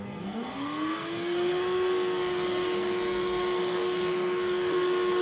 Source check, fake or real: fake